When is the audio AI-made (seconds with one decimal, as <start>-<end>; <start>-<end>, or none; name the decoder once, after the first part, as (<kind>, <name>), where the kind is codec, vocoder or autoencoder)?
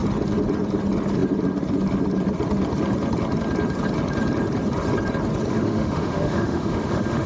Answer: 5.5-7.3 (autoencoder, DAC-VAE)